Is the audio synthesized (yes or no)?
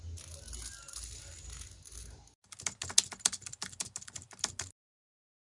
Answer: no